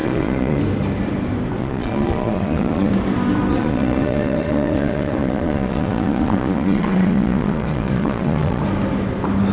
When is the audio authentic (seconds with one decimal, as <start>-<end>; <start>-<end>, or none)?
0.6-1.6; 2.9-3.5; 8.6-9.5